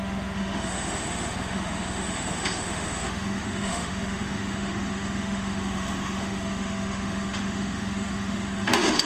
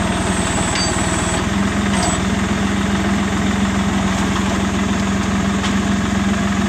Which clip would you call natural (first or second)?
second